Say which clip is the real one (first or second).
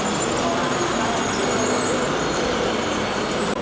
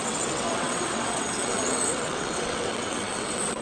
first